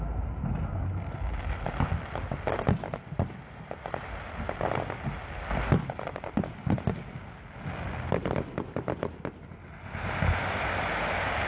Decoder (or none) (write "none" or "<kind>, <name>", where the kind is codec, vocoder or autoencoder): none